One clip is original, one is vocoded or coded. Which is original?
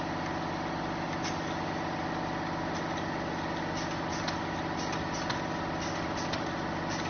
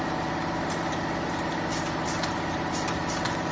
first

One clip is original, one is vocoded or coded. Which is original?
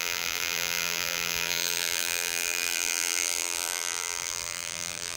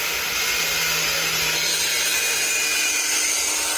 second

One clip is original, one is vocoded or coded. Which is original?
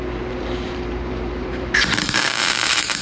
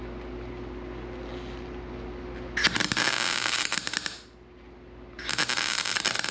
second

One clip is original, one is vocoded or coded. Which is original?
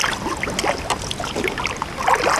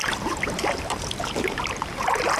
first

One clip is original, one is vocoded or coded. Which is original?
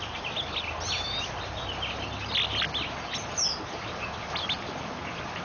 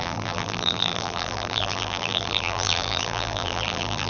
first